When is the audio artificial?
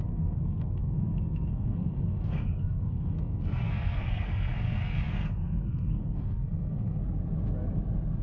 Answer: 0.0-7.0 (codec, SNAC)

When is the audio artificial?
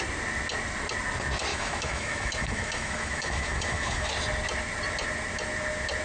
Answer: 1.5-4.1 (autoencoder, DAC-VAE)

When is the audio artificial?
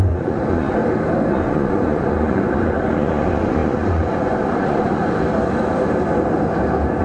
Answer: 0.0-0.8 (vocoder, Vocos); 1.3-5.0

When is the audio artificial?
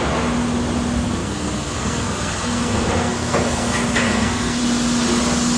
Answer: 1.2-4.6 (codec, SNAC)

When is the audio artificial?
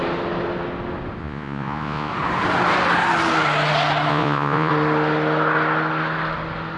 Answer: 1.2-2.1 (vocoder, Vocos); 4.1-4.7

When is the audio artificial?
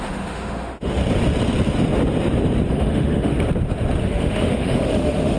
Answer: 0.0-1.0 (autoencoder, DAC-VAE); 2.7-3.3; 4.0-5.4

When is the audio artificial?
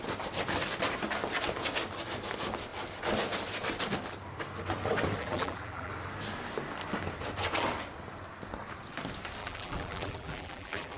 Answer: 5.2-5.9 (vocoder, BigVGAN v2); 9.4-11.0